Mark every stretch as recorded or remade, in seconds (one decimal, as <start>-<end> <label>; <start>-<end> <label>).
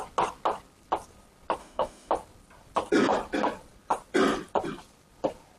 0.0-1.6 recorded; 1.6-2.1 remade; 2.1-5.6 recorded